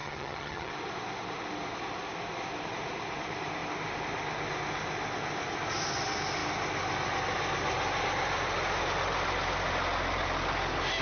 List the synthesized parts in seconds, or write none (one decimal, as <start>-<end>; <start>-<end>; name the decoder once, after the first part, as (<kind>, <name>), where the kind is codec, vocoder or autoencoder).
0.0-0.7 (vocoder, HiFi-GAN)